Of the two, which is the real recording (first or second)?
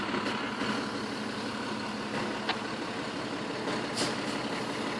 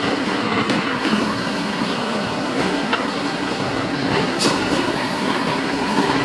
first